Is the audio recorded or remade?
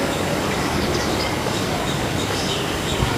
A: remade